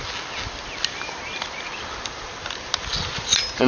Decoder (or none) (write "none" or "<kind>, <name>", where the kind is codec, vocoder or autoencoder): none